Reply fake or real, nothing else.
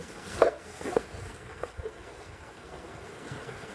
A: fake